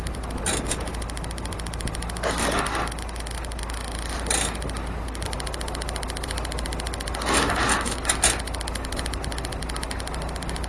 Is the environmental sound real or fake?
real